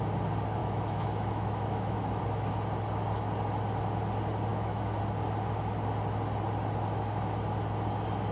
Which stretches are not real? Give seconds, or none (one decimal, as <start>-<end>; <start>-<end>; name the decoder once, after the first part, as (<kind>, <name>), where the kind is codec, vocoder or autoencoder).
0.6-2.2 (autoencoder, DAC-VAE); 4.5-5.0